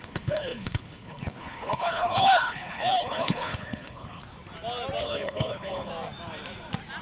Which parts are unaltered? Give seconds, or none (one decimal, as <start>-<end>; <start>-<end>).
4.2-5.0; 5.9-7.0